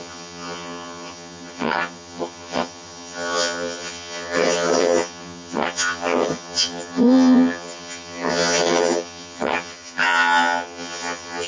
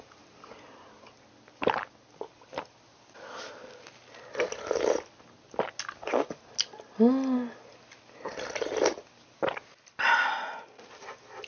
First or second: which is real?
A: second